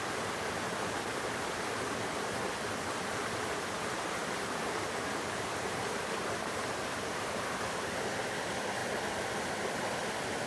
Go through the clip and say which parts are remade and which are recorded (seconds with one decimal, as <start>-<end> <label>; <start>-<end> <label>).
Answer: 0.0-4.2 recorded; 4.2-7.3 remade; 7.3-10.5 recorded